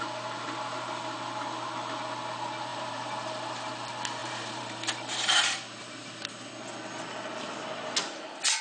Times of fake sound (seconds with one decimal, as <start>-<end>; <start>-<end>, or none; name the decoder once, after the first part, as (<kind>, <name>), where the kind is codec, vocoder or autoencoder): 2.7-3.7 (vocoder, BigVGAN v2); 4.2-6.5